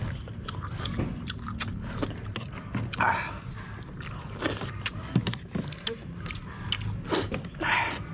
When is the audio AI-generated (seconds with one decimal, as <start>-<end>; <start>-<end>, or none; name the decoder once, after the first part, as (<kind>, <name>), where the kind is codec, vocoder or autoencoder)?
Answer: none

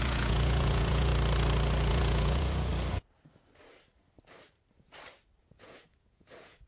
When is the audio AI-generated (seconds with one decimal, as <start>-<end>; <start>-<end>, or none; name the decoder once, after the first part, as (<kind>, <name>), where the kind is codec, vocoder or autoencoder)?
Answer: 0.0-1.1 (vocoder, Vocos); 1.9-2.7; 5.4-6.7

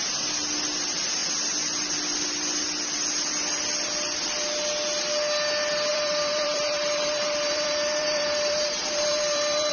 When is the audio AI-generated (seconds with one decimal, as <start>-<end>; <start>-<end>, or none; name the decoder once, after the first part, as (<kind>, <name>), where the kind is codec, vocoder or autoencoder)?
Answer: 5.9-9.7 (vocoder, BigVGAN v2)

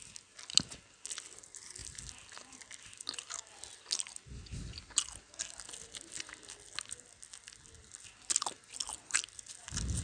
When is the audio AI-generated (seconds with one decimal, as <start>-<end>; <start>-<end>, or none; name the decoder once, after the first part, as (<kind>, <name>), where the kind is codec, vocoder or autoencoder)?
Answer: none

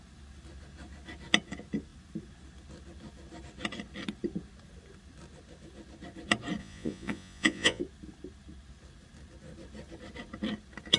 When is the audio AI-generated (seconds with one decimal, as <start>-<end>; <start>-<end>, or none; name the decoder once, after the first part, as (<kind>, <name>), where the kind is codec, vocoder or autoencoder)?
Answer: 6.6-7.8 (vocoder, Vocos)

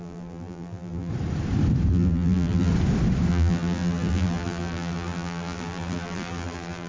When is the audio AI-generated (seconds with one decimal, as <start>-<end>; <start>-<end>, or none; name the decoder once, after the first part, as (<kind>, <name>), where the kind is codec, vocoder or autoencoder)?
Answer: 0.0-1.1 (vocoder, BigVGAN v2); 1.9-2.7; 3.3-6.9